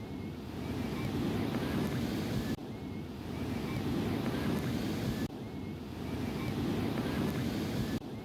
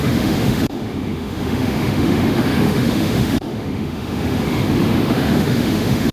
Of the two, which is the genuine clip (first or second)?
first